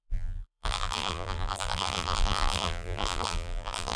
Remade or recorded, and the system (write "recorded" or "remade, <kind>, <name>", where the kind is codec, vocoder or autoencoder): remade, vocoder, BigVGAN v2